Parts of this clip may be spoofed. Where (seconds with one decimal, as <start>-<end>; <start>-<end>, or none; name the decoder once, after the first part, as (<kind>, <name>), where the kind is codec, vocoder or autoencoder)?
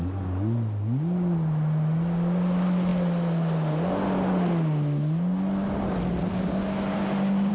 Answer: none